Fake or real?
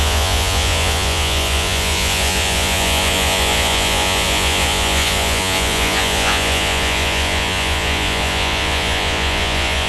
fake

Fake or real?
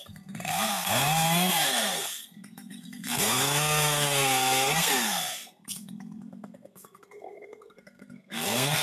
fake